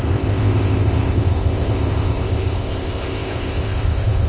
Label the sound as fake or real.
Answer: fake